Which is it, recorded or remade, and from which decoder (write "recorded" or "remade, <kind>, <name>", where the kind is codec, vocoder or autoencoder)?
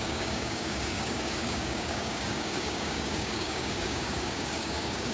remade, codec, DAC